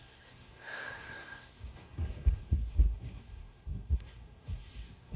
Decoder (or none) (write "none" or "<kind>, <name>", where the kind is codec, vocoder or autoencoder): codec, SNAC